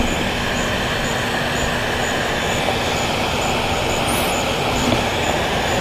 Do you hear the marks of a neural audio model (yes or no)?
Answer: no